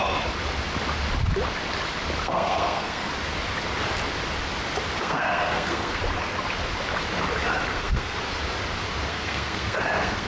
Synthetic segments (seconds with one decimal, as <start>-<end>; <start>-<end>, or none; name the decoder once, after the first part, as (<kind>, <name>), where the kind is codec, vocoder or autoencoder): 2.2-3.1 (codec, SNAC); 5.0-6.0; 7.7-8.2; 9.1-10.3